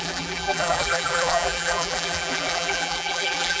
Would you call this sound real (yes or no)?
no